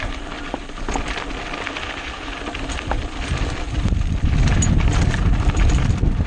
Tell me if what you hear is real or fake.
real